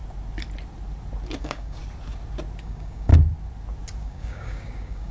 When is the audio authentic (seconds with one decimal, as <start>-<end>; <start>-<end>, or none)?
0.0-1.4; 1.8-2.6; 3.1-4.0